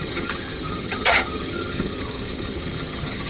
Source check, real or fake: fake